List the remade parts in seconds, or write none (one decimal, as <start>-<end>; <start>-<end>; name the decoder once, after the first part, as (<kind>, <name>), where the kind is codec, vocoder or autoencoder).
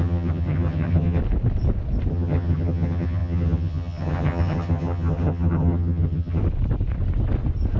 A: 0.0-1.2 (vocoder, HiFi-GAN); 2.1-6.4